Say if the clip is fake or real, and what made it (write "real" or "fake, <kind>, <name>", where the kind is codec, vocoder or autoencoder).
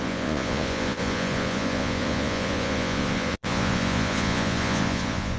fake, vocoder, Vocos